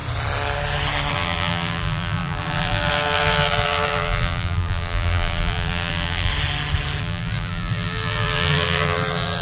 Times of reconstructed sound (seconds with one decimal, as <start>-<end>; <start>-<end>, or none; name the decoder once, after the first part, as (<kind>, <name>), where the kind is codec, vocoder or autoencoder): 1.1-6.3 (vocoder, BigVGAN v2); 7.0-9.4